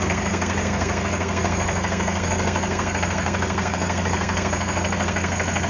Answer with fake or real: fake